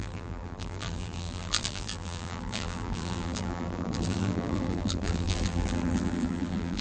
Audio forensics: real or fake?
fake